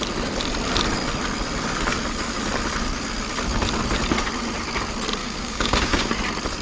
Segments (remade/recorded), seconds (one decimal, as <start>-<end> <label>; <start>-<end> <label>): 0.0-5.2 recorded; 5.2-6.1 remade; 6.1-6.6 recorded